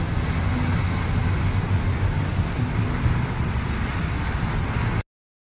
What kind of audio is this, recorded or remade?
recorded